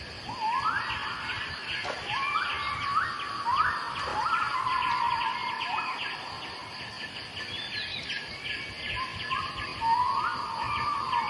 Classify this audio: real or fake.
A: real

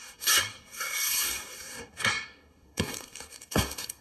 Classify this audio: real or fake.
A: fake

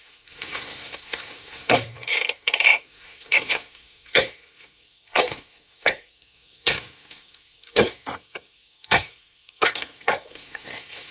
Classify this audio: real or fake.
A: fake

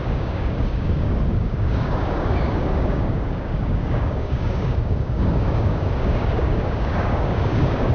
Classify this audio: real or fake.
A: fake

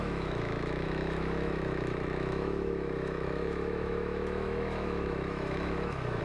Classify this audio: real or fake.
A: fake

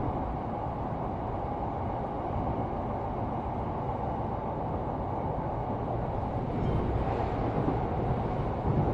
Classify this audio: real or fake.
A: real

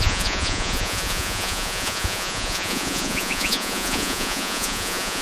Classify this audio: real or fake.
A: fake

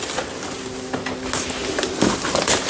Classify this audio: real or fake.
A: real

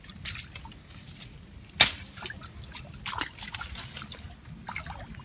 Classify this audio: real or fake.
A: real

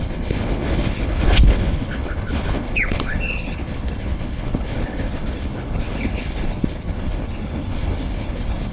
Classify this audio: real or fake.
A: fake